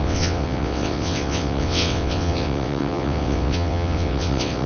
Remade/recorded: remade